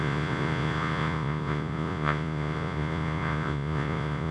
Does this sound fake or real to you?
fake